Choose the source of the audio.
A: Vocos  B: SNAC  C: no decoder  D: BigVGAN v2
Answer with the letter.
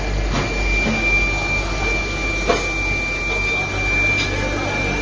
C